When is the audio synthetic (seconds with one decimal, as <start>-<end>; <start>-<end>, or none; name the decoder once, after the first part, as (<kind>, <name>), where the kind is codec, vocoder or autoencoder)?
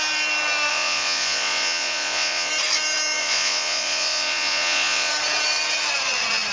0.7-2.5 (vocoder, Vocos); 3.2-5.1